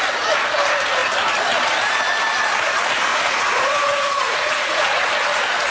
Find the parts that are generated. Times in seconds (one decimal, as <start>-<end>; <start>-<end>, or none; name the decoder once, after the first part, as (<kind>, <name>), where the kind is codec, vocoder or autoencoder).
3.1-5.1 (vocoder, Vocos)